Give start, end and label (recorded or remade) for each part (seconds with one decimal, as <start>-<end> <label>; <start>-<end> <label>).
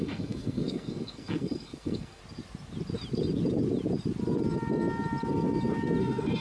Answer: 0.0-2.2 remade; 2.2-6.0 recorded; 6.0-6.4 remade